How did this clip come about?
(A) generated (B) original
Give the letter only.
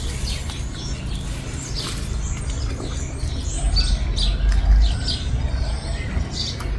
B